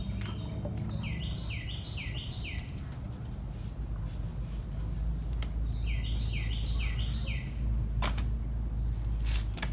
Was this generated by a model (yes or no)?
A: no